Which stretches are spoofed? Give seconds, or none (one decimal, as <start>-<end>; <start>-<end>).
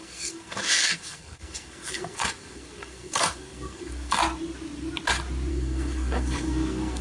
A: 0.0-4.2; 5.5-7.0